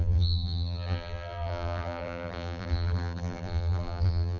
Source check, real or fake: fake